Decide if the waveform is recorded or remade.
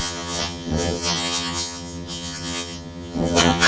remade